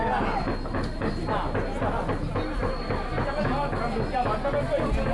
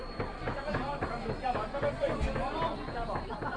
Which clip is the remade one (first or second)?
second